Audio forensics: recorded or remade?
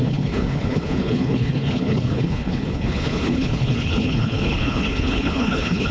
remade